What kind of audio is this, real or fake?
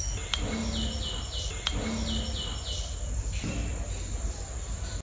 real